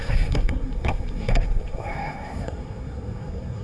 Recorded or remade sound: remade